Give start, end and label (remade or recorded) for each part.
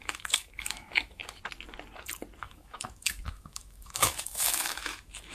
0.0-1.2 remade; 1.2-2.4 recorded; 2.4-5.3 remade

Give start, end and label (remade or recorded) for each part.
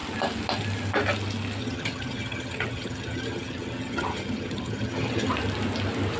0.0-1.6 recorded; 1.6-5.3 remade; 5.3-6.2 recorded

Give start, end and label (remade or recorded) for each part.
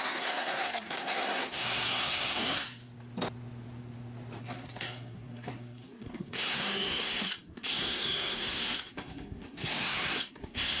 0.0-2.8 remade; 2.8-4.4 recorded; 4.4-10.8 remade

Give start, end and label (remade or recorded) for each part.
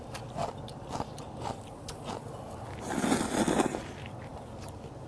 0.0-0.4 remade; 0.4-3.5 recorded; 3.5-5.1 remade